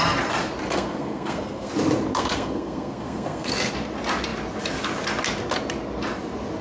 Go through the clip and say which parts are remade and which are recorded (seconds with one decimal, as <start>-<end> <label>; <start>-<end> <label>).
0.0-0.6 recorded; 0.6-1.7 remade; 1.7-2.1 recorded; 2.1-3.5 remade; 3.5-6.6 recorded